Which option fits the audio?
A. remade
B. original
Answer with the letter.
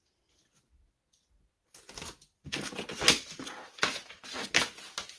B